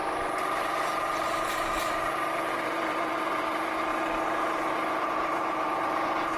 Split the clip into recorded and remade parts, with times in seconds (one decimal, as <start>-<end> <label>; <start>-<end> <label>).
0.0-1.5 recorded; 1.5-3.9 remade; 3.9-5.1 recorded; 5.1-6.4 remade

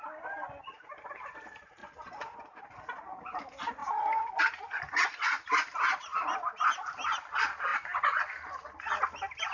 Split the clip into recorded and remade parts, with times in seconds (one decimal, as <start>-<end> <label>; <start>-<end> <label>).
0.0-3.8 recorded; 3.8-4.4 remade; 4.4-9.5 recorded

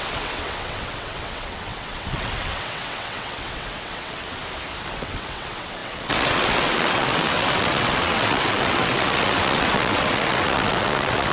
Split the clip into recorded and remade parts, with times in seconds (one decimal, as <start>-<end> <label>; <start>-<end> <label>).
0.0-4.4 remade; 4.4-4.9 recorded; 4.9-11.3 remade

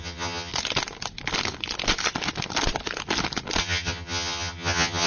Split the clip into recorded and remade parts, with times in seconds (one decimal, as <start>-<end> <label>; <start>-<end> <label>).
0.0-0.5 remade; 0.5-3.6 recorded; 3.6-5.1 remade